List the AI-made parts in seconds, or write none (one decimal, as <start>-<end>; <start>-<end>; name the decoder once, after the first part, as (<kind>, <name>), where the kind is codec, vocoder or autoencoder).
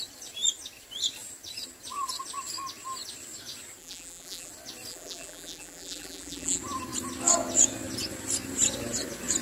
3.8-4.5 (vocoder, BigVGAN v2); 4.9-6.6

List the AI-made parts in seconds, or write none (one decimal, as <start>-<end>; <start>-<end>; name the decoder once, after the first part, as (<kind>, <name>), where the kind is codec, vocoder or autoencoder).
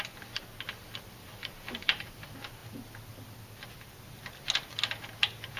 1.4-2.1 (vocoder, BigVGAN v2)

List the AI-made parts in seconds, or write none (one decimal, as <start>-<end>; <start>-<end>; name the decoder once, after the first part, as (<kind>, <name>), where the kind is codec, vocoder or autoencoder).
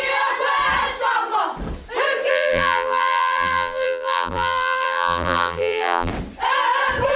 2.3-6.1 (vocoder, BigVGAN v2)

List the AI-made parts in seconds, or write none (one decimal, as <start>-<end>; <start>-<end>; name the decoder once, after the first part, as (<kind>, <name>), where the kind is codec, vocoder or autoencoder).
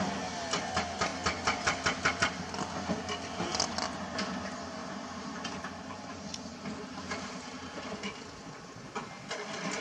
4.8-7.9 (vocoder, BigVGAN v2)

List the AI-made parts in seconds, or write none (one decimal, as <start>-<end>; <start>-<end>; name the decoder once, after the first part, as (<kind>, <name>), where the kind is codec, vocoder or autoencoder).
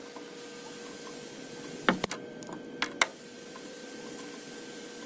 none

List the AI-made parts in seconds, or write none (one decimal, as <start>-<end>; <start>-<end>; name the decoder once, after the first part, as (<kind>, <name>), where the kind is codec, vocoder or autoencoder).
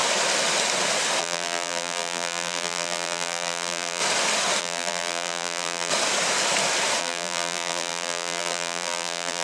1.2-4.0 (vocoder, BigVGAN v2); 4.6-5.9; 7.0-9.4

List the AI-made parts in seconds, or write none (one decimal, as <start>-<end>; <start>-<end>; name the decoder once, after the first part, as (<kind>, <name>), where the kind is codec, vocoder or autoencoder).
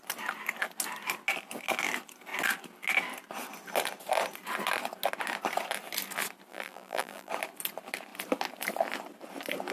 6.5-7.3 (vocoder, BigVGAN v2)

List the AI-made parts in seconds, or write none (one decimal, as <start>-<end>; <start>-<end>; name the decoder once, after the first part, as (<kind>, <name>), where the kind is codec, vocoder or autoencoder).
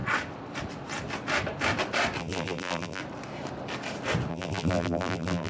2.2-3.0 (vocoder, BigVGAN v2); 4.3-5.5